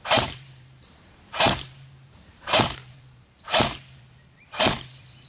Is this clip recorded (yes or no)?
no